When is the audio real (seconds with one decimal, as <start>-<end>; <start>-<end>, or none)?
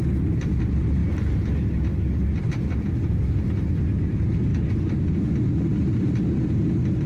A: 1.0-2.4; 4.5-5.1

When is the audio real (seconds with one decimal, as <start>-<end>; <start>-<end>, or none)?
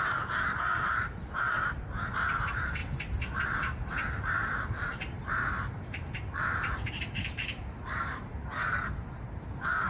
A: 2.8-3.4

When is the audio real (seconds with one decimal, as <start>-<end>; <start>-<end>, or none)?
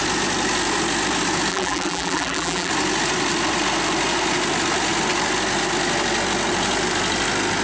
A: 0.0-1.5; 2.7-7.6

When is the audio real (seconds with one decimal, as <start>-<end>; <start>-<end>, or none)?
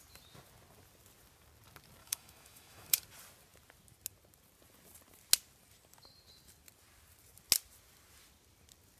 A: 0.0-2.0; 3.0-9.0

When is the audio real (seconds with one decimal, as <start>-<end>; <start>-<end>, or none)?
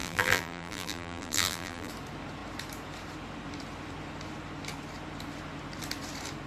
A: 1.9-6.5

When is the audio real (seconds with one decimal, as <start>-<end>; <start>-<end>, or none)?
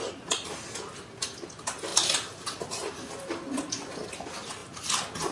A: 0.0-5.3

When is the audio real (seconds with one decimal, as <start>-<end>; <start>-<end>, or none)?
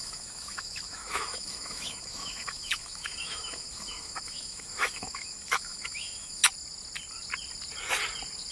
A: 6.4-8.5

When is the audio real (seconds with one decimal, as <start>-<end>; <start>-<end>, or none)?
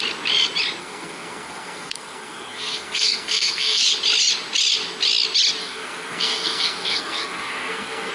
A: 0.0-0.8; 3.8-5.6